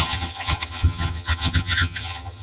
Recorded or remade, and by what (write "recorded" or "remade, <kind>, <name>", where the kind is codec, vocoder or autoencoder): remade, vocoder, HiFi-GAN